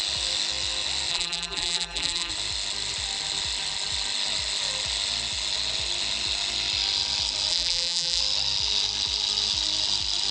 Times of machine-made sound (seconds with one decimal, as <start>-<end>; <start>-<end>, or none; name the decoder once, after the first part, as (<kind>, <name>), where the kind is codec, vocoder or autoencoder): 1.1-2.3 (vocoder, BigVGAN v2); 7.5-8.2